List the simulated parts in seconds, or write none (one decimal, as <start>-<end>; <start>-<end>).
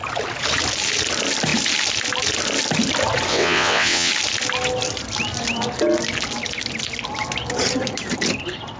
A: 3.3-4.1